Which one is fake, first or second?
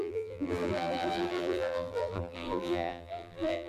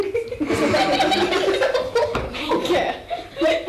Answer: first